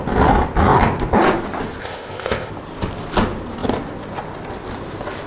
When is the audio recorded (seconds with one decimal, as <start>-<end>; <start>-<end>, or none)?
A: 0.0-1.8; 2.5-5.3